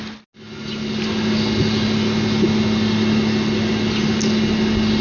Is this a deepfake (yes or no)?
no